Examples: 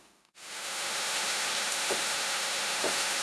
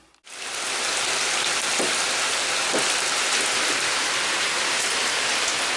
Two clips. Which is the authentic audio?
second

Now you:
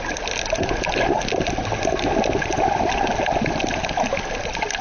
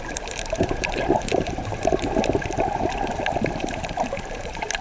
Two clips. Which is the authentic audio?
first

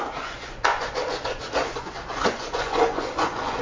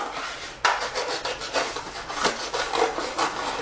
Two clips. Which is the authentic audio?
second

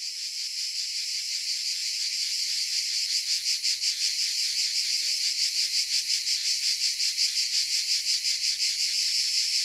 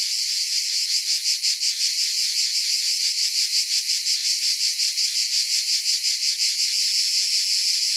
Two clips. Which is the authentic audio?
second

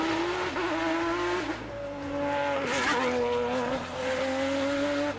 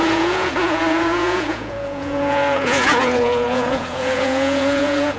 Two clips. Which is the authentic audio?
first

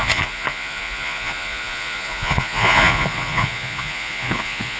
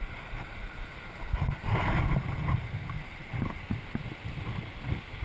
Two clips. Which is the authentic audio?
second